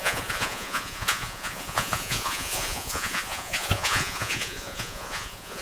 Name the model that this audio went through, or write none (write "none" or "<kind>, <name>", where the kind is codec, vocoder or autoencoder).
vocoder, Vocos